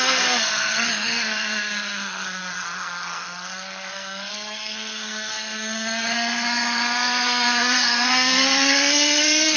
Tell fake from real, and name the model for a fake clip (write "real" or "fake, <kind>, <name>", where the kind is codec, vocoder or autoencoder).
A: fake, codec, SNAC